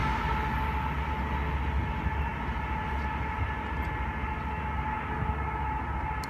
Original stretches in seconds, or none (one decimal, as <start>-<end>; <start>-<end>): 0.0-6.3